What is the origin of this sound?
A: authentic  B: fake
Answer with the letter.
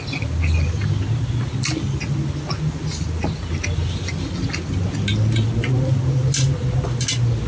A